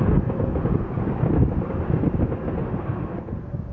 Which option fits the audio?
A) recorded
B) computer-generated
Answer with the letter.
A